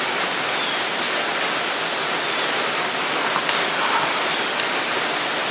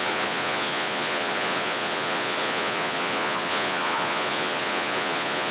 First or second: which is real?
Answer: first